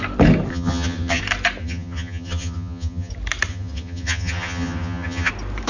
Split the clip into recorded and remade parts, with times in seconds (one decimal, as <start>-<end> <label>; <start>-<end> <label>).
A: 0.0-0.5 recorded; 0.5-1.2 remade; 1.2-1.6 recorded; 1.6-3.1 remade; 3.1-3.5 recorded; 3.5-5.3 remade; 5.3-5.7 recorded